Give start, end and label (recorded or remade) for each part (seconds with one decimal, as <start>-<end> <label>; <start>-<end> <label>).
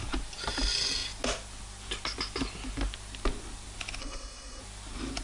0.0-4.0 recorded; 4.0-4.6 remade; 4.6-5.2 recorded